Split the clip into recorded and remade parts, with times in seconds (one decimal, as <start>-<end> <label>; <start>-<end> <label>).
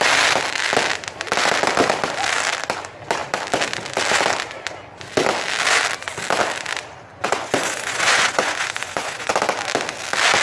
0.0-7.1 recorded; 7.1-9.3 remade; 9.3-10.4 recorded